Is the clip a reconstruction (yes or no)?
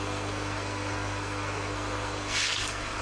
yes